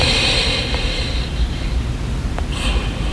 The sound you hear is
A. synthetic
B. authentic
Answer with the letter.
B